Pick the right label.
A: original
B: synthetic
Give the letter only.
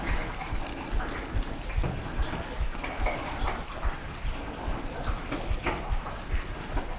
A